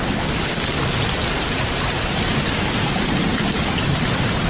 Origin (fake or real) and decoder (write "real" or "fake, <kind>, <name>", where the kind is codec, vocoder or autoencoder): real